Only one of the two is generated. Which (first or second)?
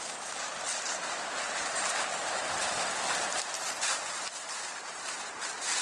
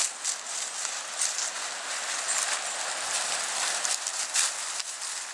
first